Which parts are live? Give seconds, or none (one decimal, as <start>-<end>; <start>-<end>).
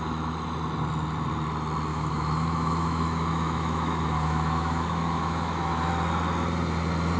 0.0-1.9; 5.9-7.2